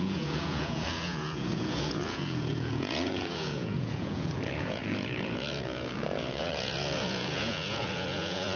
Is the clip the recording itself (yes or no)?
no